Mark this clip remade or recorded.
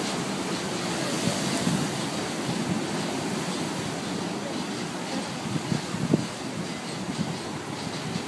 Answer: recorded